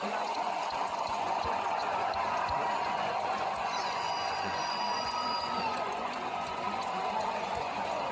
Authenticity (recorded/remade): remade